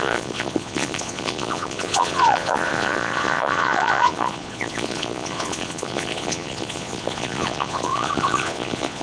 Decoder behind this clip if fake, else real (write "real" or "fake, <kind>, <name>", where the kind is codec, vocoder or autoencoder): fake, vocoder, Vocos